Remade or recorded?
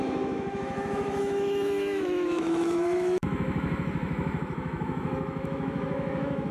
remade